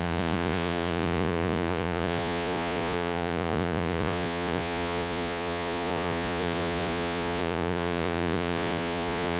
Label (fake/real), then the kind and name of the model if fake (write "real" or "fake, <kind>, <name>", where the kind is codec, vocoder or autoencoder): fake, vocoder, Vocos